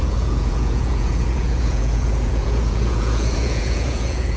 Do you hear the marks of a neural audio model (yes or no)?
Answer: yes